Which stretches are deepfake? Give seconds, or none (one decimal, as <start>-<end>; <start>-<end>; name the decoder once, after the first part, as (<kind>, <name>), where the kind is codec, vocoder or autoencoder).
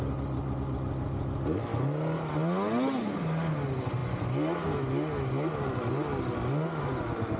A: none